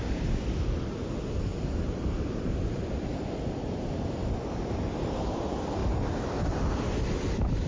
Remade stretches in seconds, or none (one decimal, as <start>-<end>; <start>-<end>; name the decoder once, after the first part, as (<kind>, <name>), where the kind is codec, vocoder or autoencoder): 1.5-4.9 (vocoder, BigVGAN v2); 5.8-6.4